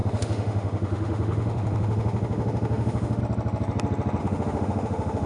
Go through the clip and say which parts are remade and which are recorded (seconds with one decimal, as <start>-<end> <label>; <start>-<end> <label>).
0.0-3.2 remade; 3.2-4.2 recorded; 4.2-5.3 remade